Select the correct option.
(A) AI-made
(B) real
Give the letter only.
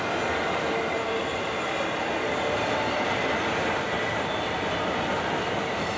B